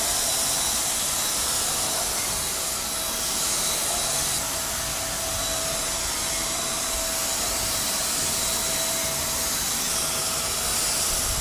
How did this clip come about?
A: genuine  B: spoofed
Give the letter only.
A